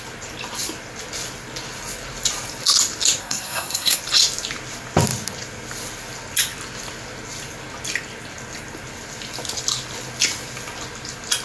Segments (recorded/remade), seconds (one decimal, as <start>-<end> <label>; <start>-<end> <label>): 0.0-3.2 recorded; 3.2-4.0 remade; 4.0-11.4 recorded